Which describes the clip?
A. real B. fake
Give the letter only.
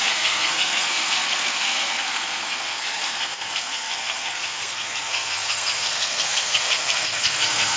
B